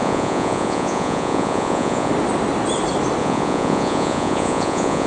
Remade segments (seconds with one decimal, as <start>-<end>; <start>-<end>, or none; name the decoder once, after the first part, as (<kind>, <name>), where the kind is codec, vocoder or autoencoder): 0.0-2.1 (vocoder, Vocos); 3.2-5.1